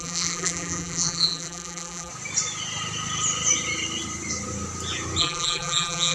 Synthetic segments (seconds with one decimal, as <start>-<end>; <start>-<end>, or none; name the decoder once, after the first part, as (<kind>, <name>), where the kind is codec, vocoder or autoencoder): 0.0-2.1 (vocoder, BigVGAN v2); 5.2-6.1